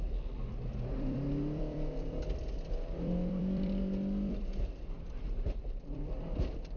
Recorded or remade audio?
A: remade